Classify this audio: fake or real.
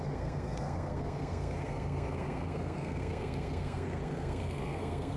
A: fake